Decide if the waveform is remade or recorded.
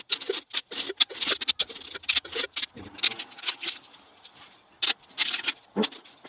recorded